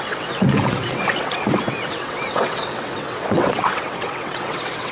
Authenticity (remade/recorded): remade